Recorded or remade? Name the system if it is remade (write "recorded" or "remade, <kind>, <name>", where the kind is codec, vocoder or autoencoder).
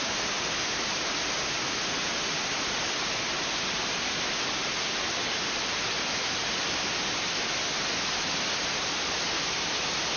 recorded